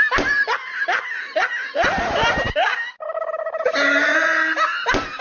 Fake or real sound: real